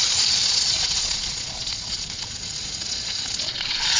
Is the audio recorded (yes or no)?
no